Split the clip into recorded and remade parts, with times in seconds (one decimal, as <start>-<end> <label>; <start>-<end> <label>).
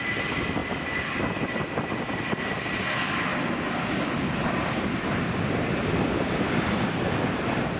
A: 0.0-7.8 recorded